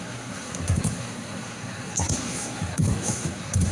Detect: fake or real fake